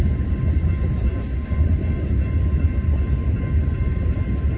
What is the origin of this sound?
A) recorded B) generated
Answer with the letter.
A